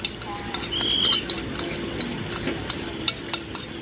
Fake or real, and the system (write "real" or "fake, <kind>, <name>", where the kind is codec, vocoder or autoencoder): real